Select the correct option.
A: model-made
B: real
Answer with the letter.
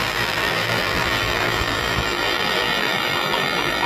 A